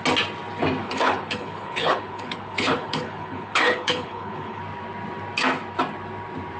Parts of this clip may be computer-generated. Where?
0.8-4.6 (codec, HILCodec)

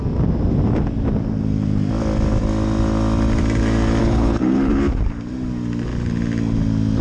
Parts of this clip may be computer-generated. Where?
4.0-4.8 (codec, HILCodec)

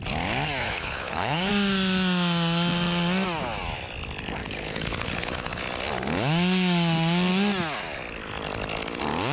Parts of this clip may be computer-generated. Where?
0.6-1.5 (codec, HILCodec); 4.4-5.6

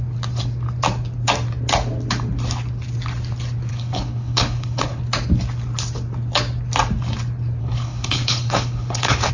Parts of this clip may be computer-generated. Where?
3.7-5.0 (codec, HILCodec); 7.6-9.3

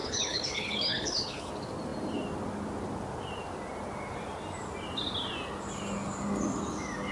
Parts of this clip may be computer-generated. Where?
0.0-1.5 (codec, HILCodec)

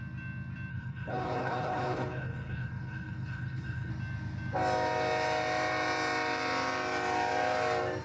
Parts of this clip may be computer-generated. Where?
0.7-3.9 (codec, HILCodec)